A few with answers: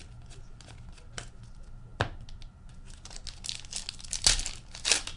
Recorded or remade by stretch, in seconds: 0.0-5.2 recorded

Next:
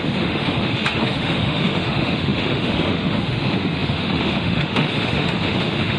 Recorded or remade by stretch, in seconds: 0.0-6.0 remade

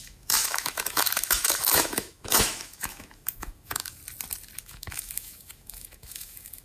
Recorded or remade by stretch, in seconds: 0.0-4.0 remade; 4.0-4.6 recorded; 4.6-6.6 remade

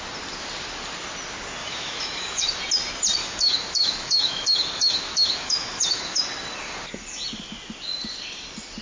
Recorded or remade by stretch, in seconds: 0.0-1.6 recorded; 1.6-2.6 remade; 2.6-3.2 recorded; 3.2-6.2 remade; 6.2-8.8 recorded